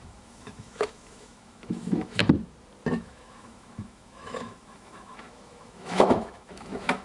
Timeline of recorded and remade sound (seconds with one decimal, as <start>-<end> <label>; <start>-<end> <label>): 0.0-2.2 remade; 2.2-2.9 recorded; 2.9-7.0 remade